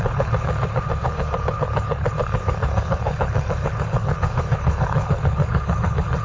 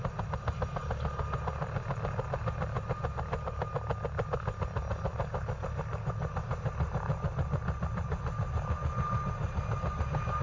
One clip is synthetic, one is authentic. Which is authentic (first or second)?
second